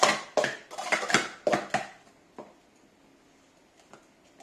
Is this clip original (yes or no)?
yes